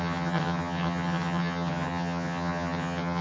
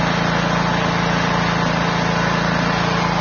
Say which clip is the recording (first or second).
second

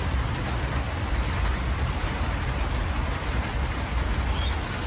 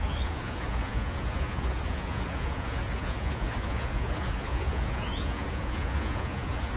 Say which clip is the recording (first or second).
first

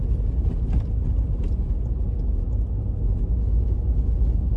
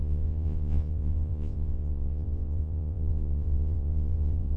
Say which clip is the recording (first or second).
first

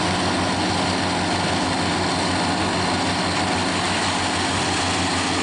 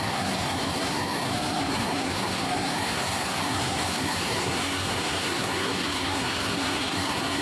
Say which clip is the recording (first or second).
first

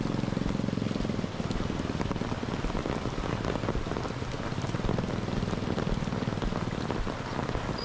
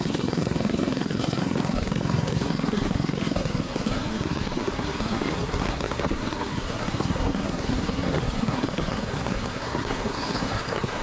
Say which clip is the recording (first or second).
first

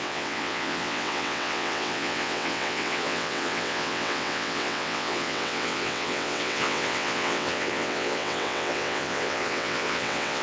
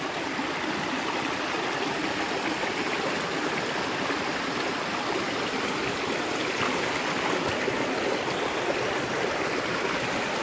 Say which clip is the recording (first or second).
second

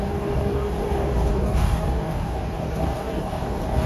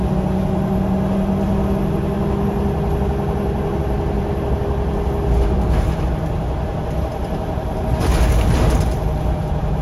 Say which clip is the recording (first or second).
second